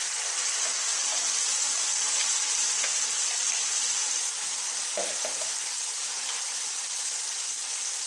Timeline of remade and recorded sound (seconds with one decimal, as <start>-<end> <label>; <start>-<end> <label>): 0.0-8.1 recorded